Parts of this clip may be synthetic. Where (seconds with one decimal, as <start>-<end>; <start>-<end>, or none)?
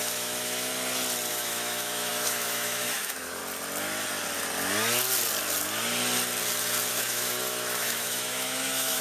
0.0-0.7; 1.3-3.4; 6.9-9.0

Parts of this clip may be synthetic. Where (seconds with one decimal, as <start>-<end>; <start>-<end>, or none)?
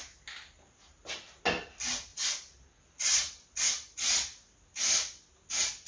none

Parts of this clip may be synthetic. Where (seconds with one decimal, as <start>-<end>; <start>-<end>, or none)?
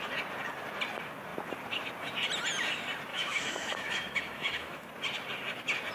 3.1-4.9